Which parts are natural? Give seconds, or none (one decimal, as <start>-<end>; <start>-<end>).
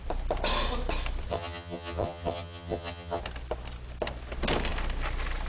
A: 0.0-1.3; 3.2-5.5